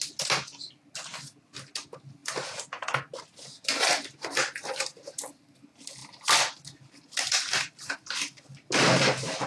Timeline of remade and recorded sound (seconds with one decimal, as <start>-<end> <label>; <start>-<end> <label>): 0.0-9.5 recorded

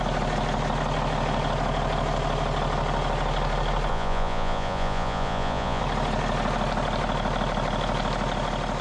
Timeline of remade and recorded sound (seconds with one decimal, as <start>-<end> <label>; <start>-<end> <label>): 0.0-3.9 recorded; 3.9-5.8 remade; 5.8-8.8 recorded

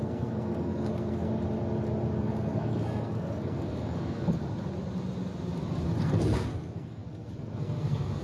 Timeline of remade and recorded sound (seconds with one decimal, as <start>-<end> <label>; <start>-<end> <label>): 0.0-1.3 remade; 1.3-2.2 recorded; 2.2-4.4 remade; 4.4-6.0 recorded; 6.0-8.2 remade

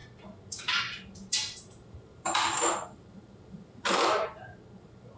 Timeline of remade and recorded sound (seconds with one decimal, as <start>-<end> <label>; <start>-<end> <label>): 0.0-1.3 recorded; 1.3-4.4 remade; 4.4-5.2 recorded

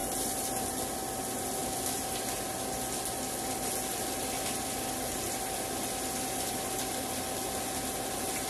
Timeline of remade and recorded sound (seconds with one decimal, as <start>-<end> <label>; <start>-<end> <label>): 0.0-8.5 recorded